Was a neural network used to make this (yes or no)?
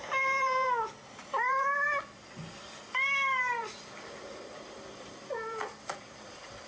yes